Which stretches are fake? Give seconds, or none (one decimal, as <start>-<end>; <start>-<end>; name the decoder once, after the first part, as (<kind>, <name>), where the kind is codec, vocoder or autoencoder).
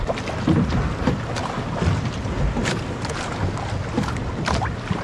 none